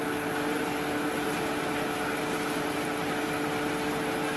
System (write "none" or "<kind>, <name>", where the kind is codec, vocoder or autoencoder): none